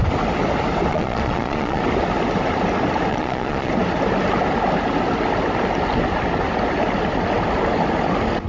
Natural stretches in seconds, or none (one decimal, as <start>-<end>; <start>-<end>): 0.0-0.9; 1.8-3.1; 3.7-8.5